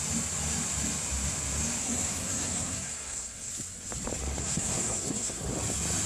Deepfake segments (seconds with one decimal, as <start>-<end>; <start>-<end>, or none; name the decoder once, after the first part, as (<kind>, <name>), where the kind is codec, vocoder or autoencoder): 1.8-3.5 (codec, SNAC); 4.4-5.5